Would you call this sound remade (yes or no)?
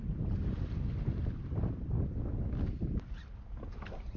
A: no